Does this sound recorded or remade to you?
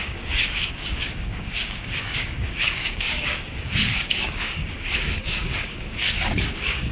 remade